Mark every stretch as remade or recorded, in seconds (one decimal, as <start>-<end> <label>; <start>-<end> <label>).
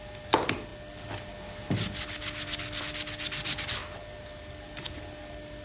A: 0.0-5.6 recorded